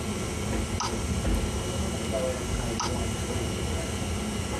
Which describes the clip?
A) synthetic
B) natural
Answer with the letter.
B